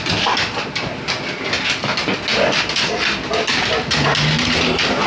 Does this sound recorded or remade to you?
recorded